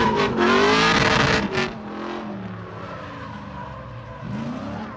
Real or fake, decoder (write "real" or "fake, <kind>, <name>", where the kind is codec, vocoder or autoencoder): real